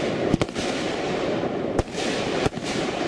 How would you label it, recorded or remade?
remade